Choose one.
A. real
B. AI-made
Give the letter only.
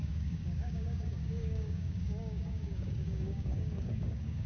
B